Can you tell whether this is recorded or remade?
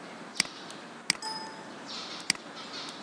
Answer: recorded